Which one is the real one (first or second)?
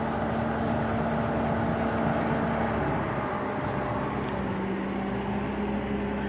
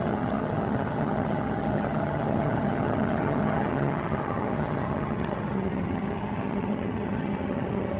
first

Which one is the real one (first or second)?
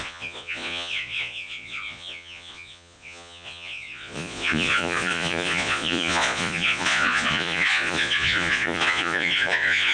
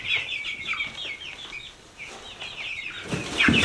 second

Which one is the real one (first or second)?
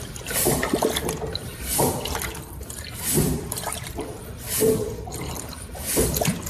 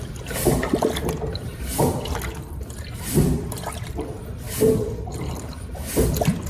second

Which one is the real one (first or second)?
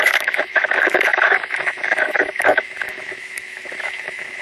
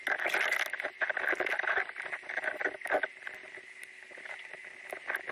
second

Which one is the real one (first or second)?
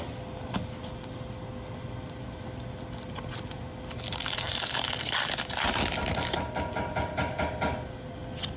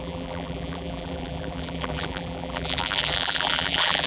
first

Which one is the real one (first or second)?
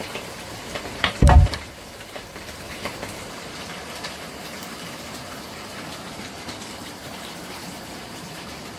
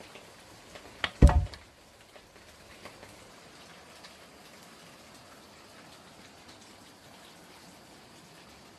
second